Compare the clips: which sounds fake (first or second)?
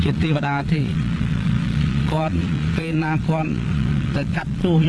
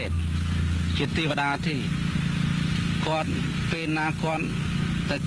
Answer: first